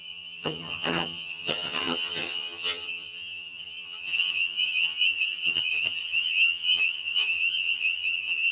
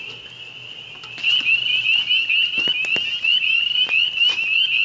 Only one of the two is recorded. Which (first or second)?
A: second